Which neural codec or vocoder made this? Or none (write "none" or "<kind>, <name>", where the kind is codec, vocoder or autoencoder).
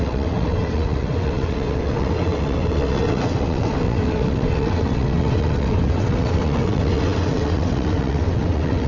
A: vocoder, WaveNeXt